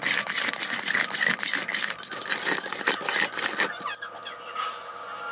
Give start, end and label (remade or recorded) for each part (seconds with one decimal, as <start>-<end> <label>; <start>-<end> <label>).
0.0-5.3 recorded